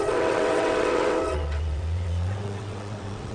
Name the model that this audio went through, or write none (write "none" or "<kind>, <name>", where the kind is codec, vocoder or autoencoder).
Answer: vocoder, WaveNeXt